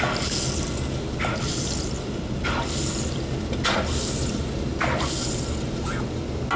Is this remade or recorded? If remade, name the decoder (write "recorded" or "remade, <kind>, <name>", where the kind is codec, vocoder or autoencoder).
recorded